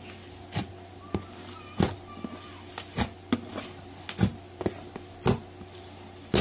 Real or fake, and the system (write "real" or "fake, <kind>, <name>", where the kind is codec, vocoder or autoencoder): real